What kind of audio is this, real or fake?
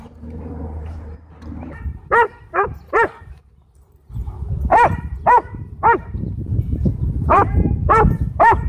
fake